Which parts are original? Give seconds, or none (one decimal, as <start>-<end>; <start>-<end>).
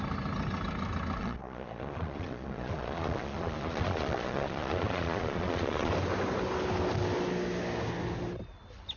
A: 0.0-1.2; 5.9-9.0